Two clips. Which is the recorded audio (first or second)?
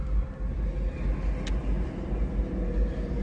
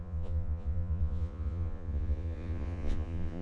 first